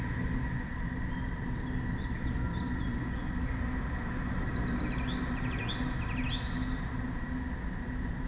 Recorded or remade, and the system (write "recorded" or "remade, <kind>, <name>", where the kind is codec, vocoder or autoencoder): recorded